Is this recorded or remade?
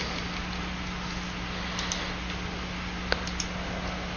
recorded